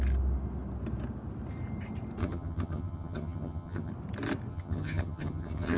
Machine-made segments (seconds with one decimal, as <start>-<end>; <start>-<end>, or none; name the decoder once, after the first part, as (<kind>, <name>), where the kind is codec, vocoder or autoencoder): 2.2-3.9 (vocoder, HiFi-GAN); 4.5-5.8